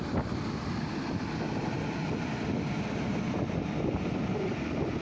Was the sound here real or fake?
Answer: real